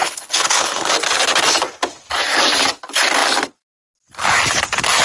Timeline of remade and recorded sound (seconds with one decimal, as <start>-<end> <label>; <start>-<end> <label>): 0.0-0.9 remade; 0.9-5.0 recorded

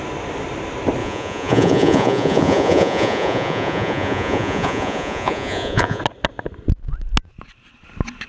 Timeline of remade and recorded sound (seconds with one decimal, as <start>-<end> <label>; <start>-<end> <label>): 0.0-1.0 recorded; 1.0-6.0 remade; 6.0-8.3 recorded